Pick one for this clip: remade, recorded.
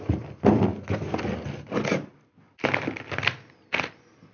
recorded